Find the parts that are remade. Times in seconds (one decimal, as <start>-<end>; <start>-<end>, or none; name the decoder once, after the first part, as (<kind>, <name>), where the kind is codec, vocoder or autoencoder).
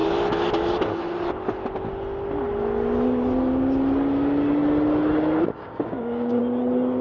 5.6-6.4 (codec, DAC)